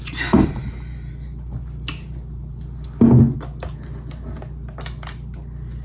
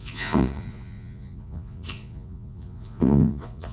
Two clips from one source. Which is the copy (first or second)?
second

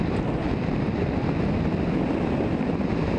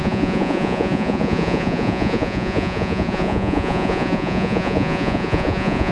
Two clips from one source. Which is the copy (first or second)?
second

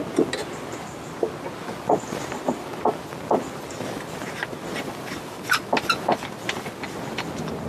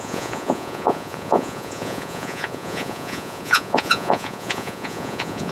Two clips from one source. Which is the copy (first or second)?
second